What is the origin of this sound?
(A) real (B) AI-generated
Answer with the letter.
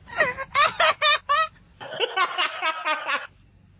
A